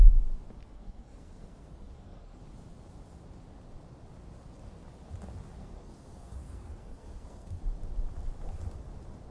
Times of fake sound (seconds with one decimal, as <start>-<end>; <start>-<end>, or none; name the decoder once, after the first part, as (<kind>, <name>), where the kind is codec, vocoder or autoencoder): 0.6-2.4 (codec, SNAC); 5.6-7.6